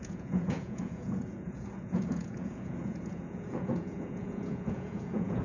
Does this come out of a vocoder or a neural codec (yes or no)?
yes